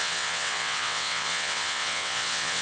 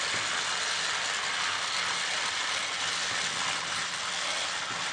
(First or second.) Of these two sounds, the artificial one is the first